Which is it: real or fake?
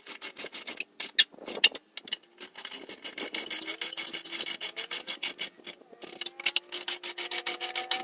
real